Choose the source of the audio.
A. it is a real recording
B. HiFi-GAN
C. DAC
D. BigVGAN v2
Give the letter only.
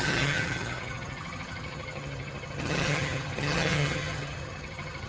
B